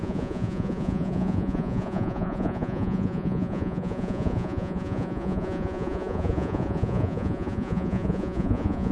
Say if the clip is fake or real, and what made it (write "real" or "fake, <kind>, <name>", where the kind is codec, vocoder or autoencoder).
fake, vocoder, Vocos